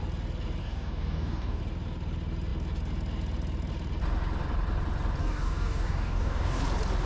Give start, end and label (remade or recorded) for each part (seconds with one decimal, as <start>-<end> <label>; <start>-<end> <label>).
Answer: 0.0-0.6 recorded; 0.6-1.6 remade; 1.6-5.2 recorded; 5.2-6.6 remade; 6.6-7.1 recorded